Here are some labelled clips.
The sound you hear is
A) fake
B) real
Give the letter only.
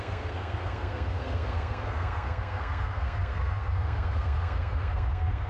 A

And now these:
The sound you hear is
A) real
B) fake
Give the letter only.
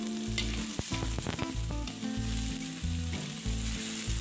A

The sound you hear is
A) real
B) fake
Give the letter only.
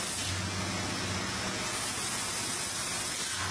A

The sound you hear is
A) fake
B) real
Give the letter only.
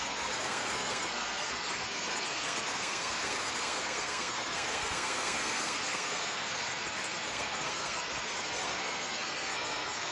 A